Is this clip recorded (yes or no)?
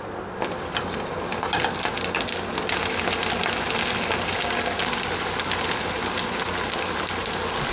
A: yes